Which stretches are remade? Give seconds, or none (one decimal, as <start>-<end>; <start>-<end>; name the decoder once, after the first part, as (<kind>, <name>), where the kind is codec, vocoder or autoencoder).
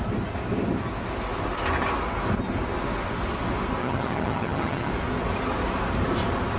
3.8-4.9 (vocoder, HiFi-GAN)